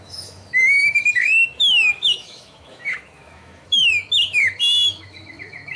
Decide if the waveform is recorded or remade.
remade